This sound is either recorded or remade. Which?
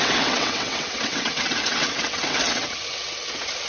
remade